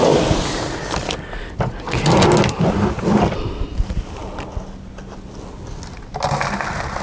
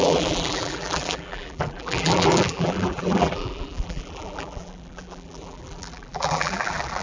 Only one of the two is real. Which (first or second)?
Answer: first